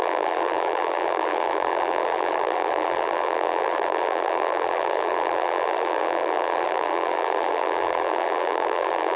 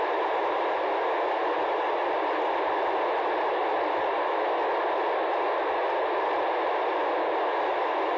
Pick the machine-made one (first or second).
first